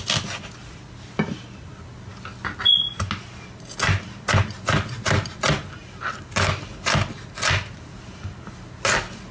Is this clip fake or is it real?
real